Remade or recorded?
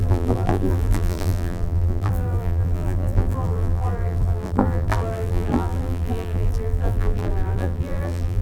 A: remade